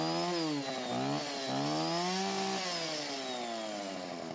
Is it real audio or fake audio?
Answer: real